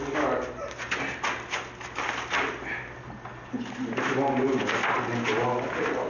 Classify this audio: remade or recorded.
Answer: recorded